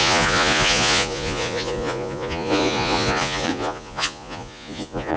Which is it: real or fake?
fake